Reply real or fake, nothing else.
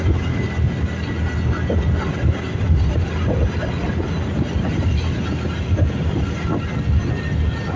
real